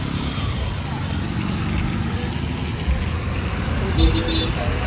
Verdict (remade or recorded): recorded